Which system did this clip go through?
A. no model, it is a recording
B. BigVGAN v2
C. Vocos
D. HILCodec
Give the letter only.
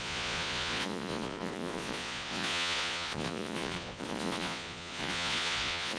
C